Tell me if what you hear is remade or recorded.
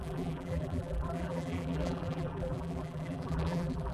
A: remade